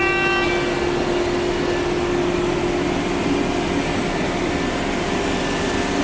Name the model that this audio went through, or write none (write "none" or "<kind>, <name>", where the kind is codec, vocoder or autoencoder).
none